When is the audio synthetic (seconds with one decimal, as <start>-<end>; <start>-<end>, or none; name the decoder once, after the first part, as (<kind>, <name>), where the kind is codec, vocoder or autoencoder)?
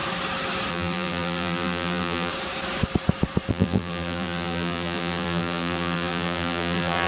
0.7-2.3 (vocoder, BigVGAN v2); 3.5-7.1